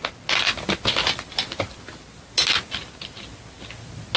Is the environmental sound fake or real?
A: real